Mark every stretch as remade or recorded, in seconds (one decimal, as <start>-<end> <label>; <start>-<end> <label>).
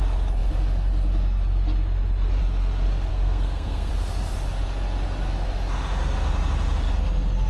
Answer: 0.0-3.1 recorded; 3.1-3.9 remade; 3.9-7.5 recorded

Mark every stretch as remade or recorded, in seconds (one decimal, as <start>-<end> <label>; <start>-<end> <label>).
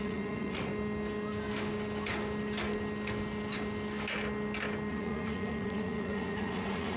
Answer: 0.0-0.7 remade; 0.7-4.9 recorded; 4.9-7.0 remade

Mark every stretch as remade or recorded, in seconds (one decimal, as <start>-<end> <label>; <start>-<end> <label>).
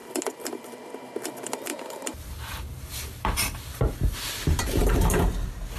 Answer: 0.0-1.7 recorded; 1.7-5.2 remade; 5.2-5.8 recorded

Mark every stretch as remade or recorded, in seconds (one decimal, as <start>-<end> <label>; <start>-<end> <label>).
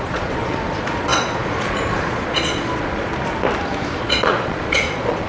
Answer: 0.0-3.1 remade; 3.1-4.0 recorded; 4.0-5.3 remade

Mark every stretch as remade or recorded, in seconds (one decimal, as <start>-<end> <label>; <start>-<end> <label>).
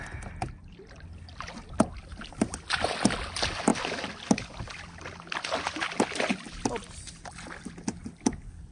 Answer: 0.0-8.7 recorded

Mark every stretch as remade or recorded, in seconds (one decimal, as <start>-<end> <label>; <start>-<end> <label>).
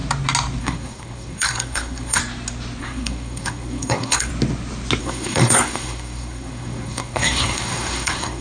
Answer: 0.0-0.6 recorded; 0.6-2.2 remade; 2.2-2.8 recorded; 2.8-4.3 remade; 4.3-5.0 recorded; 5.0-8.4 remade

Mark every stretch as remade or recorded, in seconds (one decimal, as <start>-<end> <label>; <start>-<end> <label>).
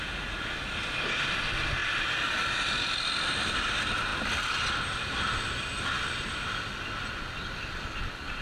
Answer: 0.0-8.4 recorded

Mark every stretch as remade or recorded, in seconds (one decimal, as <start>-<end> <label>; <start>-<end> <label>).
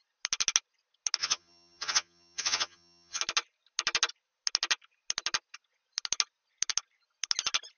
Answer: 0.0-1.2 recorded; 1.2-3.2 remade; 3.2-7.8 recorded